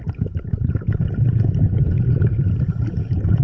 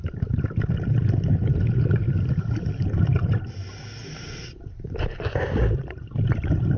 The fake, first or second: first